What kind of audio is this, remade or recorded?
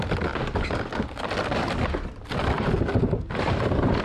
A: recorded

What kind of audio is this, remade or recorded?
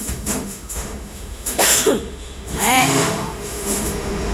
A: remade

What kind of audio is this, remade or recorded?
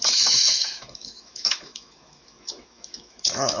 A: remade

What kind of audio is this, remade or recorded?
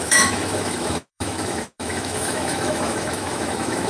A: remade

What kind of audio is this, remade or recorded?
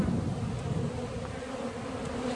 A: recorded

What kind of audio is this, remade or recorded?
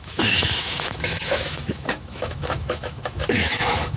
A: remade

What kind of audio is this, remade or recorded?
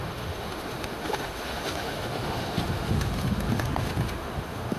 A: remade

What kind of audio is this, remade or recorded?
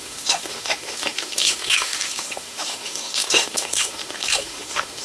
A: remade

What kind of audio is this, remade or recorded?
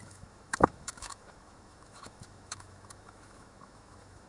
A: remade